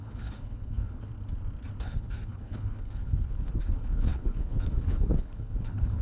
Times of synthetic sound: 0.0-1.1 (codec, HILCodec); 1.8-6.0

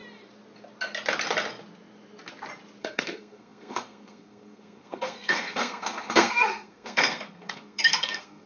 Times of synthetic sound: 2.8-8.5 (codec, SNAC)

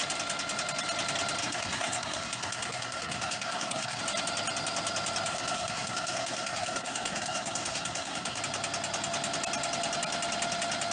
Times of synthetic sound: 1.4-4.0 (codec, SNAC); 5.3-8.4

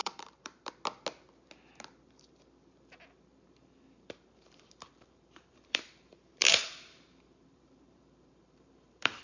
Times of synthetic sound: 0.0-0.7 (vocoder, BigVGAN v2); 3.6-9.2